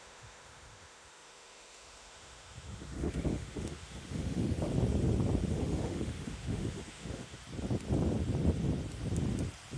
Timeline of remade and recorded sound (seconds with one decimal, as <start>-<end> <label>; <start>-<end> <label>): 0.0-4.7 remade; 4.7-5.5 recorded; 5.5-7.4 remade; 7.4-9.8 recorded